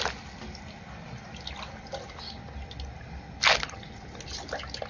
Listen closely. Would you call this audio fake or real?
real